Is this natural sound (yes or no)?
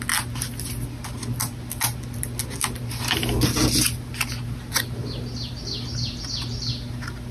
yes